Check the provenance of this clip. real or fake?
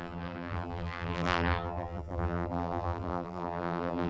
fake